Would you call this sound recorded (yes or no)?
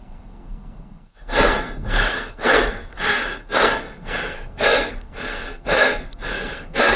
no